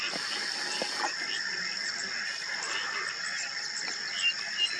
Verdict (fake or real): real